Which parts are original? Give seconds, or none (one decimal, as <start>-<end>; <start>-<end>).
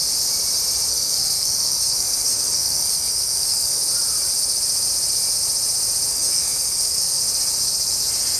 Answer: 0.0-0.9; 3.8-6.1; 7.2-8.4